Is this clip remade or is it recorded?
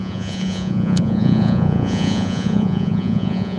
remade